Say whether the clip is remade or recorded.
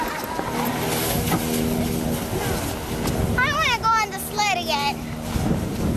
recorded